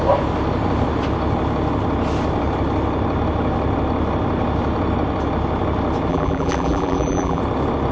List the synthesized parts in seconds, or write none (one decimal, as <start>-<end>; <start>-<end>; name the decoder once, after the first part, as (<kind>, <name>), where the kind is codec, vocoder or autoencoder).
6.1-7.4 (vocoder, BigVGAN v2)